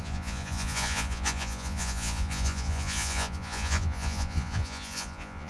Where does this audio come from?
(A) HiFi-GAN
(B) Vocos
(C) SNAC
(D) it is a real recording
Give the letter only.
B